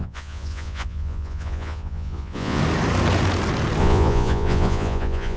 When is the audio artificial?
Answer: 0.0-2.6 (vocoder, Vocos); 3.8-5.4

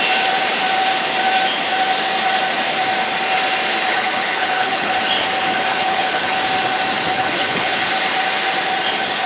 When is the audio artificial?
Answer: 3.9-5.0 (codec, HILCodec); 5.7-6.4; 7.1-7.9

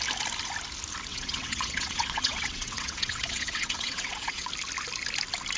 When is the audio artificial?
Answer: 1.1-4.5 (vocoder, WaveNeXt)

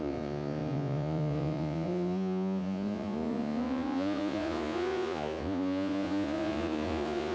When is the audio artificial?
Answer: 0.0-7.3 (vocoder, Vocos)

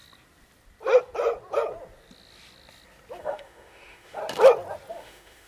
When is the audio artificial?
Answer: 3.2-4.2 (autoencoder, DAC-VAE); 4.9-5.5

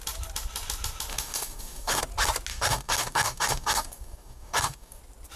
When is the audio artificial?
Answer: 1.1-2.0 (codec, DAC); 2.5-5.0

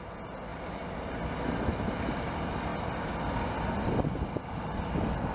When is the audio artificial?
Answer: none

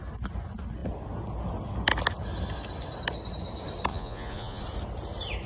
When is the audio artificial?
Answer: 3.9-4.6 (vocoder, Vocos)